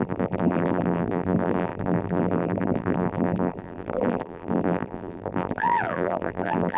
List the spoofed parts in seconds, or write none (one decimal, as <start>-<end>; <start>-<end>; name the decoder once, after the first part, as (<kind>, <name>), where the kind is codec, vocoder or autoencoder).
0.0-6.8 (vocoder, BigVGAN v2)